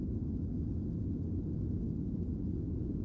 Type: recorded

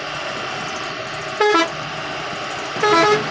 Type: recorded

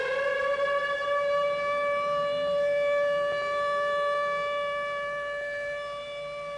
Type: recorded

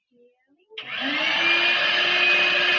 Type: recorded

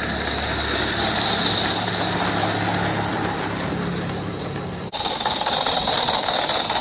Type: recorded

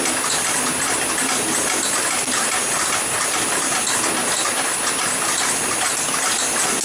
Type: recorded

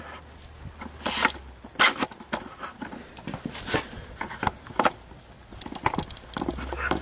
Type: recorded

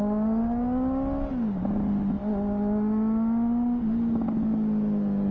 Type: recorded